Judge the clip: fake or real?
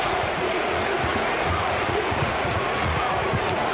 fake